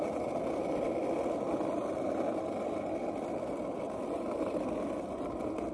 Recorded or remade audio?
recorded